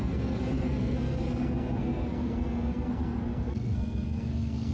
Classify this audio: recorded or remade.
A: remade